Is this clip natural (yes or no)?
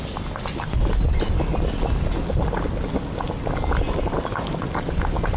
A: yes